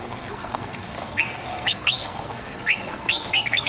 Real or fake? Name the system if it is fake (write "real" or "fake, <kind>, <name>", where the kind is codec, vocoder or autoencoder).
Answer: fake, codec, SNAC